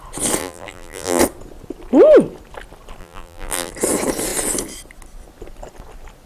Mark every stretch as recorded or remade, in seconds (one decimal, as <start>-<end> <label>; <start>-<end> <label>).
0.0-0.4 recorded; 0.4-1.2 remade; 1.2-3.0 recorded; 3.0-3.7 remade; 3.7-6.3 recorded